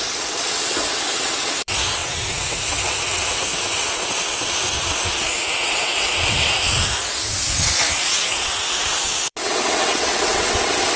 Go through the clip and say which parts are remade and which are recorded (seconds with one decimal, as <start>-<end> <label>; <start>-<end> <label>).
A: 0.0-11.0 remade